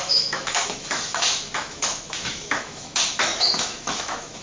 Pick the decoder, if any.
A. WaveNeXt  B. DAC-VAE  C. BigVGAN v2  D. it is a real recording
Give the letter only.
B